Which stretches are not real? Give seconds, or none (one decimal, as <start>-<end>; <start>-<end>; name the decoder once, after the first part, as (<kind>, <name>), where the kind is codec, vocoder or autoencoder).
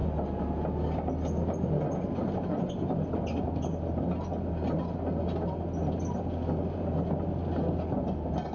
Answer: none